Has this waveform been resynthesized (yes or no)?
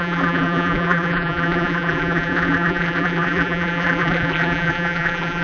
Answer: yes